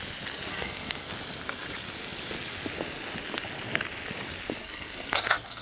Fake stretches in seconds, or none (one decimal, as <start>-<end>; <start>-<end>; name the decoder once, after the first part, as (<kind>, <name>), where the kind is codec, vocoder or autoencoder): 0.5-1.1 (codec, SNAC); 4.6-5.6

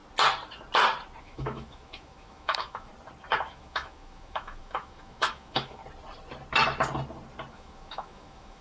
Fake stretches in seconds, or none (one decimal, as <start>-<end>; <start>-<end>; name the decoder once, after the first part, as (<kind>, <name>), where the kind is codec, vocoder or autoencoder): 1.2-2.9 (autoencoder, DAC-VAE); 3.5-5.8; 7.5-8.6

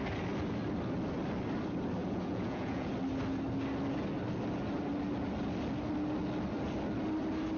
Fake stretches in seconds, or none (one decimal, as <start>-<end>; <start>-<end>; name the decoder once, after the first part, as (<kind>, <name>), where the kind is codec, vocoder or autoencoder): 2.0-2.9 (vocoder, Vocos)

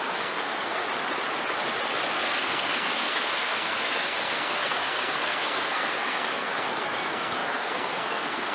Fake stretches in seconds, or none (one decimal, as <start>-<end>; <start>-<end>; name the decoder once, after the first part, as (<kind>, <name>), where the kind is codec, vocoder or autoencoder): 0.0-0.8 (codec, SNAC); 2.1-8.5

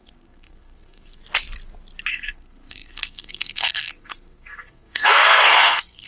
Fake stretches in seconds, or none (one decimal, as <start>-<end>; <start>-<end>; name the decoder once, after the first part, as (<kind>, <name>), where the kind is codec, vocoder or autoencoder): 0.0-1.2 (codec, SNAC); 2.1-6.1

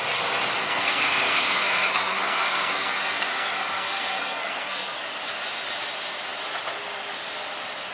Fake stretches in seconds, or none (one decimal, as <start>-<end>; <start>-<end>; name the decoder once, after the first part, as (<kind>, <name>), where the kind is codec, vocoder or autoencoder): 0.6-5.0 (codec, SNAC)